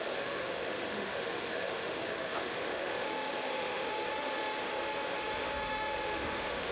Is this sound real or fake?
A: fake